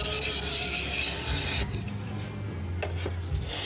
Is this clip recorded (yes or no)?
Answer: yes